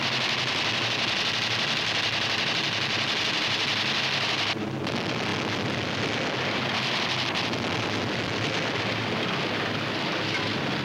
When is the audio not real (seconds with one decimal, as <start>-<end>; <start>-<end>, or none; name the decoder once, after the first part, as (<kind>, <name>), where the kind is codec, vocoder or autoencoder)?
none